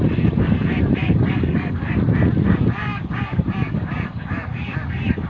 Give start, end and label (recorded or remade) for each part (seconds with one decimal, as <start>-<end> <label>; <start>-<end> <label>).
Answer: 0.0-1.0 recorded; 1.0-1.9 remade; 1.9-2.9 recorded; 2.9-5.3 remade